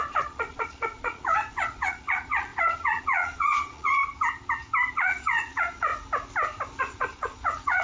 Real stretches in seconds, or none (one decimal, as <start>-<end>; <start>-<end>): 4.0-4.9; 5.9-6.8